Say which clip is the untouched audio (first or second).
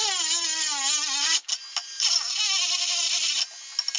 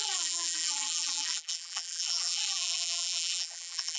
first